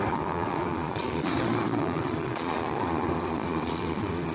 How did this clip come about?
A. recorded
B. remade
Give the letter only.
B